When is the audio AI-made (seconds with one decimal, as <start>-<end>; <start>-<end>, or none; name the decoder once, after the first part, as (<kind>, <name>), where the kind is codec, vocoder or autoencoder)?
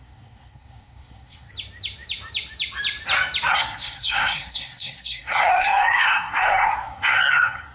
0.0-1.5 (codec, SNAC); 3.5-7.7